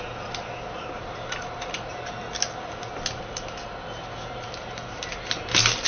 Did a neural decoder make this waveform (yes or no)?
no